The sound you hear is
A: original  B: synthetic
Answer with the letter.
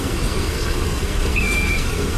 B